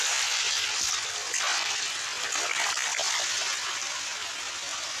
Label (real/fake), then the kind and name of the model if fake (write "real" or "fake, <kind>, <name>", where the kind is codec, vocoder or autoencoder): real